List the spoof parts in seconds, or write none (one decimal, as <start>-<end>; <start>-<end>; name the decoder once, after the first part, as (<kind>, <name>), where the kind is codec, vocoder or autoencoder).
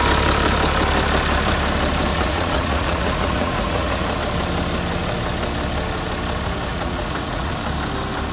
2.1-4.2 (vocoder, Vocos); 6.7-7.5